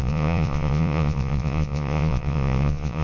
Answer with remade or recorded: remade